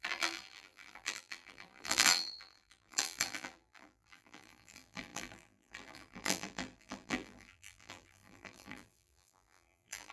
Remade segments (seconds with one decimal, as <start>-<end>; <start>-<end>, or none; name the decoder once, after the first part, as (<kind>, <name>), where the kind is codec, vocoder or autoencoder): 0.0-10.1 (vocoder, BigVGAN v2)